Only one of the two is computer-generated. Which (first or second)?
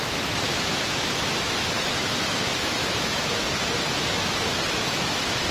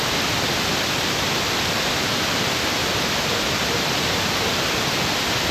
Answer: first